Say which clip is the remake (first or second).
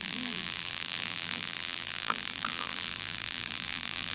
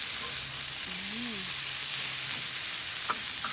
first